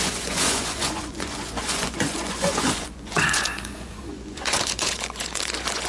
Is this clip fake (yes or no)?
yes